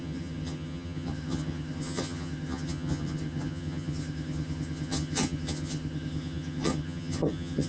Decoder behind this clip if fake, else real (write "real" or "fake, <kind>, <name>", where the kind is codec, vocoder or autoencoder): fake, vocoder, HiFi-GAN